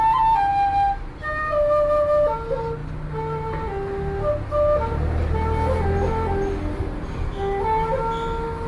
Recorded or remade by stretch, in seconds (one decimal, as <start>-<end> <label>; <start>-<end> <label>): 0.0-8.7 recorded